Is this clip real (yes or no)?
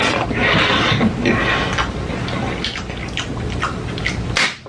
yes